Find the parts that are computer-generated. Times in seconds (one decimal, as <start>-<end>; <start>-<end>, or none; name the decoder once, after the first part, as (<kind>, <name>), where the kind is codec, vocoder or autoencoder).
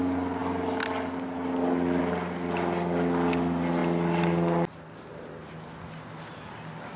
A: none